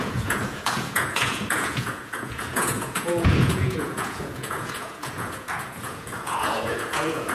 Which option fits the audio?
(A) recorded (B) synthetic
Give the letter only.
B